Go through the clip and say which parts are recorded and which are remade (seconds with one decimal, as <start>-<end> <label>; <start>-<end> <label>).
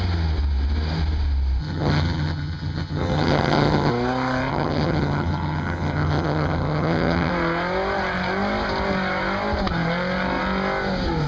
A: 0.0-1.6 recorded; 1.6-3.9 remade; 3.9-4.5 recorded; 4.5-7.3 remade; 7.3-11.3 recorded